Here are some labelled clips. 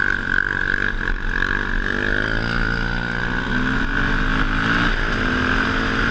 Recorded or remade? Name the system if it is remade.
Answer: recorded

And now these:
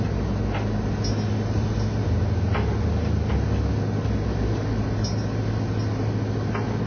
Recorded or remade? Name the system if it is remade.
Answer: recorded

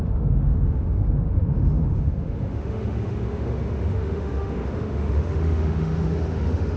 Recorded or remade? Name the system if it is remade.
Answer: remade, autoencoder, DAC-VAE